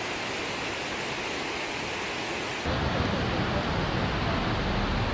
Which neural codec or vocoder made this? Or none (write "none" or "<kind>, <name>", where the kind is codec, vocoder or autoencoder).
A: none